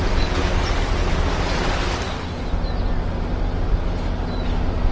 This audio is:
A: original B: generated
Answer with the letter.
A